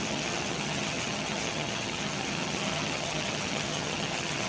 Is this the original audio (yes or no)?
no